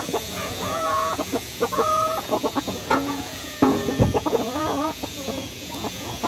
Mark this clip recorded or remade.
remade